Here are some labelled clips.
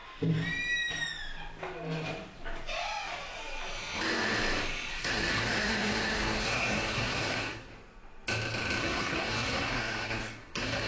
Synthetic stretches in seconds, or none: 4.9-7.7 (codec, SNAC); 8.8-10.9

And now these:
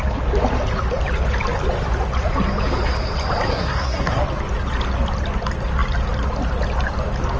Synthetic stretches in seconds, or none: 3.5-4.2 (codec, SNAC)

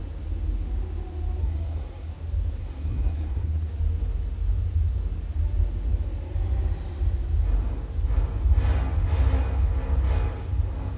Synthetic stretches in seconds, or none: 1.4-2.1 (codec, SNAC); 2.6-3.7

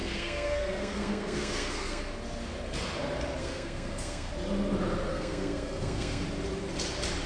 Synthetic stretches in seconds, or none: 0.0-2.0 (codec, SNAC); 3.4-4.3; 5.1-6.2

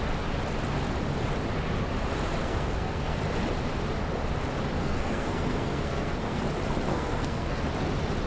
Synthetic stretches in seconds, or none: 2.4-3.2 (codec, SNAC); 4.8-6.4; 6.9-7.6

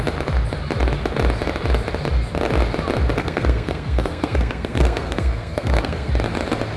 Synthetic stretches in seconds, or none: 3.2-6.1 (codec, SNAC)

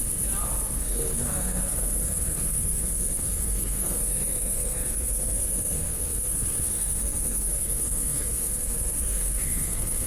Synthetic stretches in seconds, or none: 0.8-10.1 (codec, SNAC)

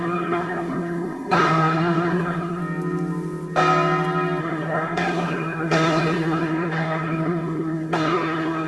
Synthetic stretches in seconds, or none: 0.0-2.6 (codec, SNAC); 4.4-8.7